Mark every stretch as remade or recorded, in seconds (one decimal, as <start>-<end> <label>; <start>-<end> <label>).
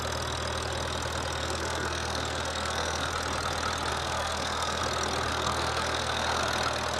0.0-1.4 recorded; 1.4-3.1 remade; 3.1-3.9 recorded; 3.9-4.8 remade; 4.8-5.3 recorded; 5.3-6.4 remade; 6.4-7.0 recorded